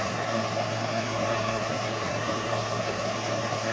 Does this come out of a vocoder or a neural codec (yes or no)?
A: yes